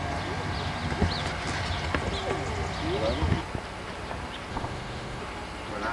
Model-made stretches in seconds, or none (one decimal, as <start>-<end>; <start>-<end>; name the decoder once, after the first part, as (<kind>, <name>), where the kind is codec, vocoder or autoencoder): 4.5-5.2 (autoencoder, DAC-VAE)